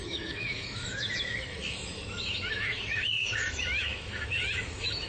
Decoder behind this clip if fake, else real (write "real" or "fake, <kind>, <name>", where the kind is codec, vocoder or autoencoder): fake, autoencoder, DAC-VAE